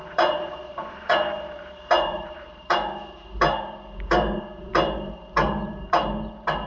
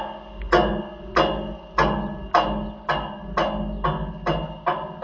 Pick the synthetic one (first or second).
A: first